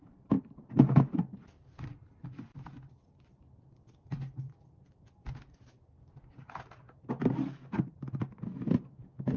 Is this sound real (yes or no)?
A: yes